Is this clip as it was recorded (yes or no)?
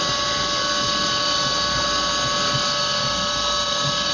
yes